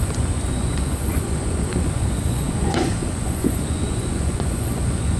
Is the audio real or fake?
fake